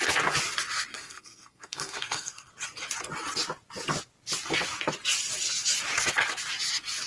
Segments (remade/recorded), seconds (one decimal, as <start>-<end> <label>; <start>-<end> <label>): 0.0-1.0 recorded; 1.0-2.5 remade; 2.5-7.1 recorded